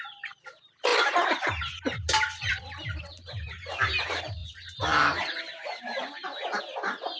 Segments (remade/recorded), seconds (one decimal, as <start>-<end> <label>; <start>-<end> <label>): 0.0-7.2 recorded